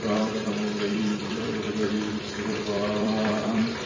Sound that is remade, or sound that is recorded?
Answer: remade